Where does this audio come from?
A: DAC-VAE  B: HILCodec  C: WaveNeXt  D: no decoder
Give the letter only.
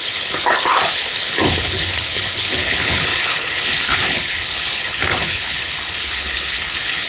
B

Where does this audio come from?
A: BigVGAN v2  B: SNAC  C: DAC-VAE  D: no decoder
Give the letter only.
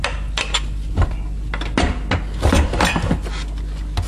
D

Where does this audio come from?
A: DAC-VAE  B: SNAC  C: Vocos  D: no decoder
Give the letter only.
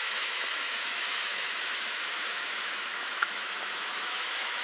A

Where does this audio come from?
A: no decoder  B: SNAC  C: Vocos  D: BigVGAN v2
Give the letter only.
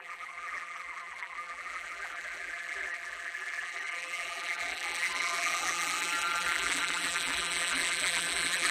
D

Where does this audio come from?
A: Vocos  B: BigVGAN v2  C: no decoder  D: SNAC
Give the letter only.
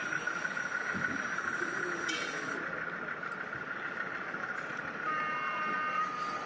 C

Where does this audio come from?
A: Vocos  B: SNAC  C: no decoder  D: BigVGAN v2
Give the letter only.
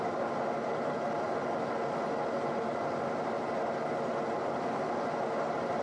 C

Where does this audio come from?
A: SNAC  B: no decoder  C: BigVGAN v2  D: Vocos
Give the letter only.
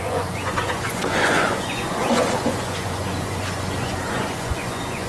D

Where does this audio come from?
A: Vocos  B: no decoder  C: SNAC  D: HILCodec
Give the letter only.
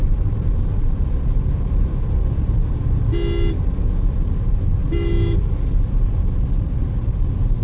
B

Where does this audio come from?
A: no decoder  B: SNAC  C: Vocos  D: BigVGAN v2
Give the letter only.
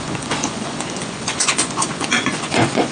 C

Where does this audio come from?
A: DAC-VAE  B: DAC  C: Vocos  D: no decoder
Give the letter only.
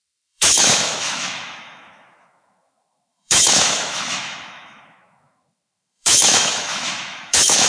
A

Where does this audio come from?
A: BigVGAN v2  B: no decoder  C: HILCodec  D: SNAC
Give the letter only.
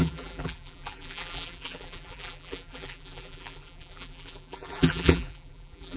A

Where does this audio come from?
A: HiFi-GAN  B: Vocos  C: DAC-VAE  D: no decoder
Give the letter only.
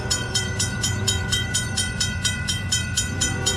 B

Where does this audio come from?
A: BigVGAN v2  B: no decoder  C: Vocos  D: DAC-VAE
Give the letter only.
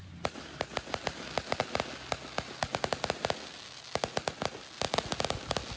B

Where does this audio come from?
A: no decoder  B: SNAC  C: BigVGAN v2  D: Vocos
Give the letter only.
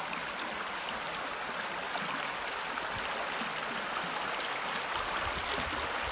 A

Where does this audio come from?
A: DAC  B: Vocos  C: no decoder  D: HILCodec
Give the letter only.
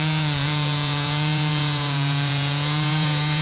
B